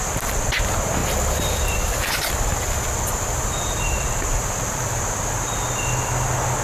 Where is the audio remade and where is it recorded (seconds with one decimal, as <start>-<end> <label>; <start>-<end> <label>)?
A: 0.0-1.0 recorded; 1.0-5.0 remade; 5.0-6.6 recorded